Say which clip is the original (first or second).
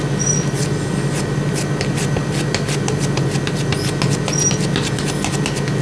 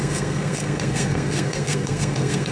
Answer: first